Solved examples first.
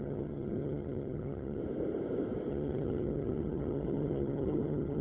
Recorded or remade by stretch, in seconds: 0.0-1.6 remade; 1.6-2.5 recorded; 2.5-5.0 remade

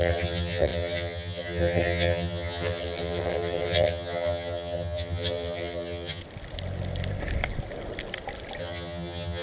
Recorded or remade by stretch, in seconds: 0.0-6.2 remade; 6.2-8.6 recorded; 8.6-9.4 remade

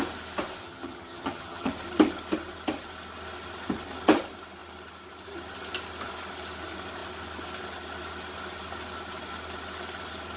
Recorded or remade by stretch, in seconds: 0.0-0.6 recorded; 0.6-1.7 remade; 1.7-10.4 recorded

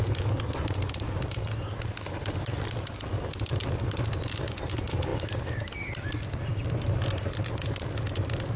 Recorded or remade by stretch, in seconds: 0.0-8.6 recorded